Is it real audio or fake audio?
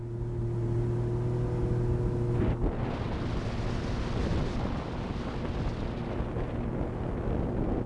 real